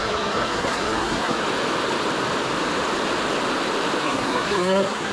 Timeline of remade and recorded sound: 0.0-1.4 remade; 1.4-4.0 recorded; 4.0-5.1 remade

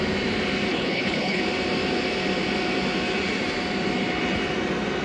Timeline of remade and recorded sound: 0.0-0.7 recorded; 0.7-1.4 remade; 1.4-5.0 recorded